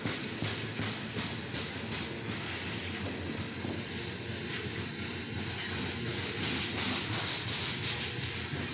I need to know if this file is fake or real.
real